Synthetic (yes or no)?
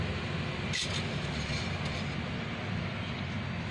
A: no